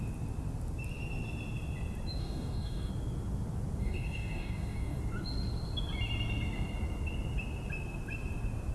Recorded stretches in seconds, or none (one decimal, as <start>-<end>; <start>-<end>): 0.0-2.2; 2.9-3.8; 5.0-8.7